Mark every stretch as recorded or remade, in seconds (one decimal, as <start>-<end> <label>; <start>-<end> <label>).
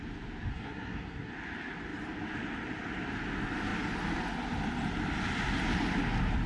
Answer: 0.0-0.5 recorded; 0.5-1.3 remade; 1.3-6.5 recorded